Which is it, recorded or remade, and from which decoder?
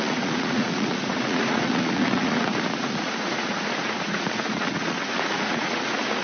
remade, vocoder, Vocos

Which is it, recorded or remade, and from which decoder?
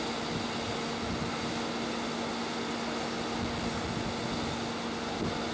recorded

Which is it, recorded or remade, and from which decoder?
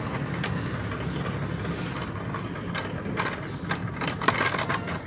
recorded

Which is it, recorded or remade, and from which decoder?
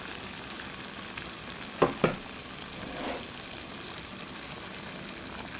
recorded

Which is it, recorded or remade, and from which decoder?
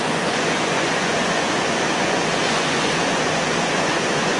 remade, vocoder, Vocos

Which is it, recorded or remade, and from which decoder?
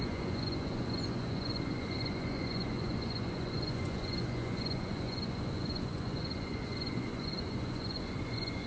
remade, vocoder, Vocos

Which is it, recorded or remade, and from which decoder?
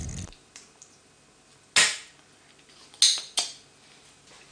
recorded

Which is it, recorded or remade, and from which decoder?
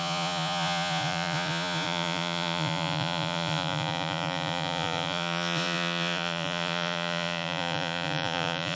remade, vocoder, Vocos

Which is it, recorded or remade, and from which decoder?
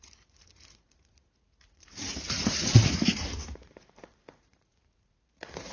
remade, vocoder, Vocos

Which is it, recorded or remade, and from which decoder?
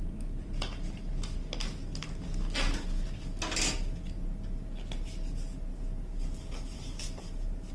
recorded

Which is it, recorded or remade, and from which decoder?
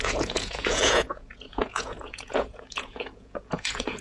remade, vocoder, Vocos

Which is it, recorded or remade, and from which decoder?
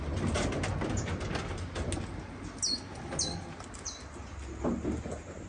recorded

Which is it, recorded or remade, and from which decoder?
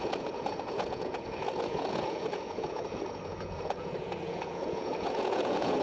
remade, vocoder, Vocos